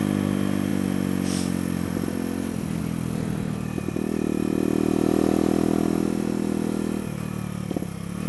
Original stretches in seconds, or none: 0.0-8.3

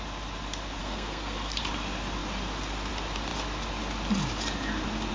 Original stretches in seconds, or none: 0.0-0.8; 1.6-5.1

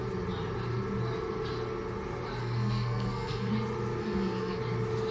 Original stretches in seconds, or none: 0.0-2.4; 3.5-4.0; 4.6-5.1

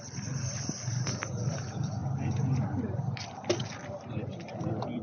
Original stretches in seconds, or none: 0.0-5.0